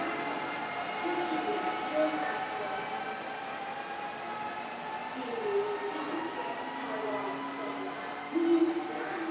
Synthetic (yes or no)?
no